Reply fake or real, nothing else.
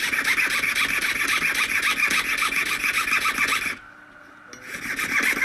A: real